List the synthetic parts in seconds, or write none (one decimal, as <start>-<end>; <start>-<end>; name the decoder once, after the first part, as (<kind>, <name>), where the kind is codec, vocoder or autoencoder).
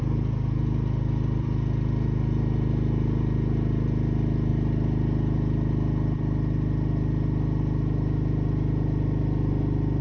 none